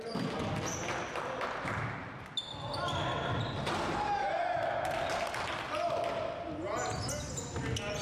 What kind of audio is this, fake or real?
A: real